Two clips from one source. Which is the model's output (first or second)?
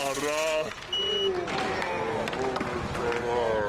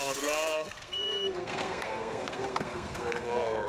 second